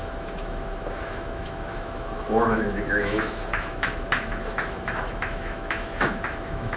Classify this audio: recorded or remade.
remade